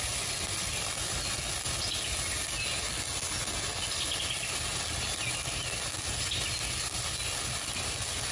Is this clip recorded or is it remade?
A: recorded